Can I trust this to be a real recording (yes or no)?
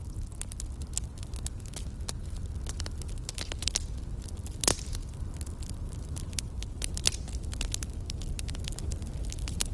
yes